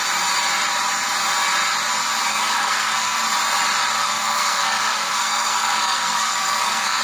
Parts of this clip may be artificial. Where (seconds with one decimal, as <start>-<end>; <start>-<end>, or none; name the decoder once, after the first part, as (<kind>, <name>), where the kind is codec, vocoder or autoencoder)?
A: 2.3-3.2 (codec, SNAC); 4.0-7.0